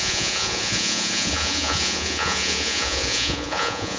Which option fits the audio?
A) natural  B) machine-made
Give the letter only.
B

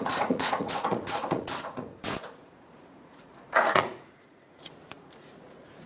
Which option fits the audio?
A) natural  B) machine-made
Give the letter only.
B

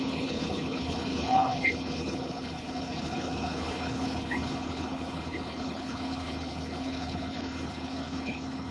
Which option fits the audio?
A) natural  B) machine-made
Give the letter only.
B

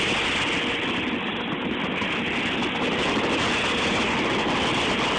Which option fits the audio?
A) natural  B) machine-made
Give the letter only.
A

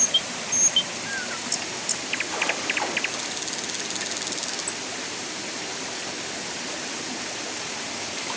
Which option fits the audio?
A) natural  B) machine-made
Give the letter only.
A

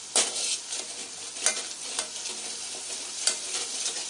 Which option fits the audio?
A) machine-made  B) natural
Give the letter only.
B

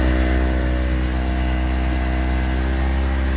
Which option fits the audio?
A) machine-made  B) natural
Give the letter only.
B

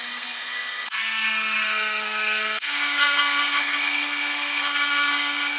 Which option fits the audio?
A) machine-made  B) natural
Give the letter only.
A